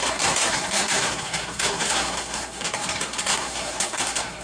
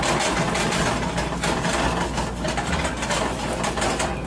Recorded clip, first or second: second